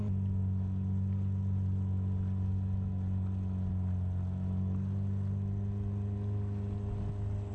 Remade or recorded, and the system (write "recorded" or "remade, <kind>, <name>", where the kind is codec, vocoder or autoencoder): recorded